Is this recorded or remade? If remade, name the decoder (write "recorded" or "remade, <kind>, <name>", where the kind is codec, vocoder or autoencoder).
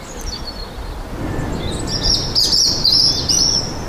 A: recorded